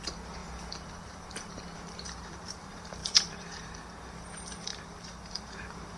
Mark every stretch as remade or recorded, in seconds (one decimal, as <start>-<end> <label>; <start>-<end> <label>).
0.0-6.0 remade